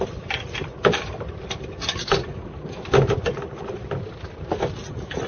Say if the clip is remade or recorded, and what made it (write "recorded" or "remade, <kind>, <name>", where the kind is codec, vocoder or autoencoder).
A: recorded